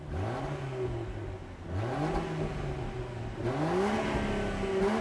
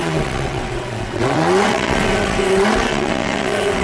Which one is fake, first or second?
second